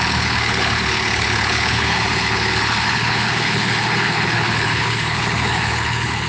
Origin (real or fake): fake